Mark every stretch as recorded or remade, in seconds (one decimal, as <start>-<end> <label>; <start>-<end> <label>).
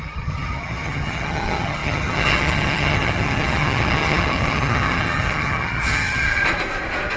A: 0.0-6.4 remade; 6.4-7.2 recorded